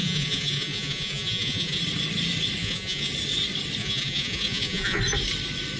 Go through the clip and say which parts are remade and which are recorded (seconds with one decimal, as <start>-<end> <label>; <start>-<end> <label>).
0.0-1.8 remade; 1.8-2.6 recorded; 2.6-3.1 remade; 3.1-3.8 recorded; 3.8-5.0 remade; 5.0-5.8 recorded